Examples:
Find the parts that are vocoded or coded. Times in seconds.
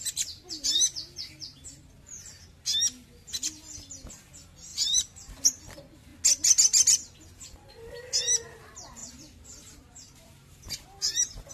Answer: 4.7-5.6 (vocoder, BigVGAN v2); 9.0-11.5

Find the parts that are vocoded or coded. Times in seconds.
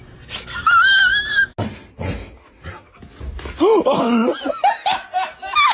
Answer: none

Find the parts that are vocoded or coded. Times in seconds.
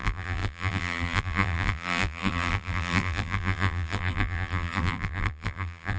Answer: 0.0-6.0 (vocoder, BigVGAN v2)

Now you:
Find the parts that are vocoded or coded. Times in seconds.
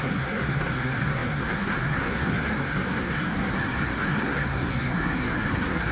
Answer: 0.0-5.9 (codec, SNAC)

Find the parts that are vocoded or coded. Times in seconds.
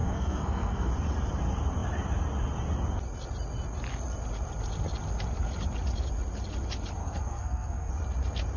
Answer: 0.0-0.9 (codec, SNAC); 7.0-7.9